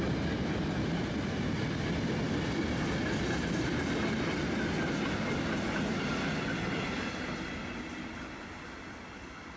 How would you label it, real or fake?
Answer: real